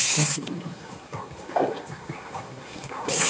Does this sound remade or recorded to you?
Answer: remade